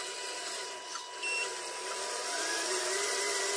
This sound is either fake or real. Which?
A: real